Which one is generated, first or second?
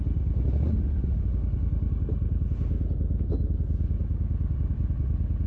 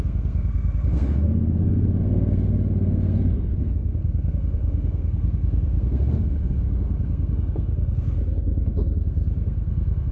second